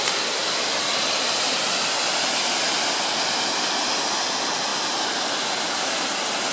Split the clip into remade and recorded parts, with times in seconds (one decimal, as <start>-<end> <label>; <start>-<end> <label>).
0.0-6.5 recorded